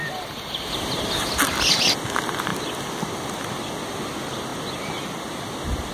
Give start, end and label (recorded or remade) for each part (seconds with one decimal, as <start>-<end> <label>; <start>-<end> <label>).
0.0-5.9 recorded